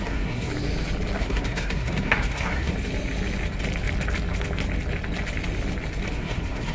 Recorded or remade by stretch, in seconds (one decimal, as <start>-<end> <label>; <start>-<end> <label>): 0.0-0.5 remade; 0.5-1.2 recorded; 1.2-2.7 remade; 2.7-6.1 recorded; 6.1-6.7 remade